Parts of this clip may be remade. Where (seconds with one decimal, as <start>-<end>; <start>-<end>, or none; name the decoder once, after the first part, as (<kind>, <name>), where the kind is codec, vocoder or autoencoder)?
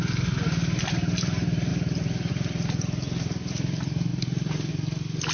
1.7-2.3 (vocoder, BigVGAN v2); 4.1-4.7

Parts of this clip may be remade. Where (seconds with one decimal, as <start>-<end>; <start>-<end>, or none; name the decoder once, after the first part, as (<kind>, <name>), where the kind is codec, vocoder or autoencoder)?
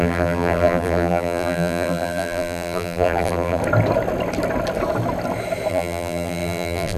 0.0-3.6 (vocoder, BigVGAN v2); 5.7-7.0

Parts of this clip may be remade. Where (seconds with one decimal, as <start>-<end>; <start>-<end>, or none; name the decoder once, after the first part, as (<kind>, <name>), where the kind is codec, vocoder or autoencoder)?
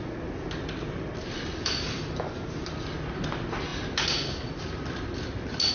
1.2-2.7 (vocoder, BigVGAN v2); 3.7-5.7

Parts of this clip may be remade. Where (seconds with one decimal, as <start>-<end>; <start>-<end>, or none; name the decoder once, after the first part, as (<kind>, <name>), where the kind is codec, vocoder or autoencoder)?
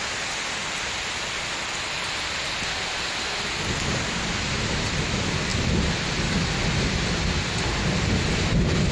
0.6-3.1 (vocoder, BigVGAN v2); 5.5-7.8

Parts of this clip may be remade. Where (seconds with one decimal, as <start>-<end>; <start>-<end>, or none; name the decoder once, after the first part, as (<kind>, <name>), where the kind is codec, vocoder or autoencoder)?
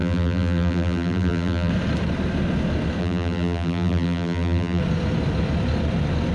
0.0-1.7 (vocoder, BigVGAN v2); 3.0-4.8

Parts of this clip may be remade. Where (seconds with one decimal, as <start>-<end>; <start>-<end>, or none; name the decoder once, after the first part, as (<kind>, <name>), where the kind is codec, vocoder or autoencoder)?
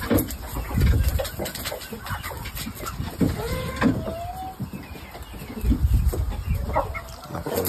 none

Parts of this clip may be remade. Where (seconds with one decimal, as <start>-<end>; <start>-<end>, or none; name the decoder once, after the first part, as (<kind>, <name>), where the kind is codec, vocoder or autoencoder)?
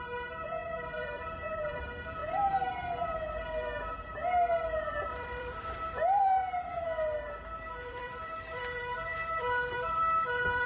0.0-4.2 (vocoder, BigVGAN v2); 4.8-6.4; 7.9-10.7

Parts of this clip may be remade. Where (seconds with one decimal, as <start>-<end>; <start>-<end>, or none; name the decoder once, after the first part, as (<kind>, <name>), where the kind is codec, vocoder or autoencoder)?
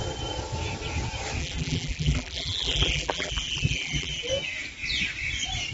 1.4-4.3 (vocoder, BigVGAN v2)